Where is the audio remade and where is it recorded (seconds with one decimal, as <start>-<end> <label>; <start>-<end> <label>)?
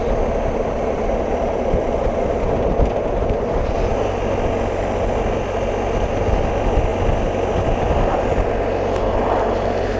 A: 0.0-10.0 recorded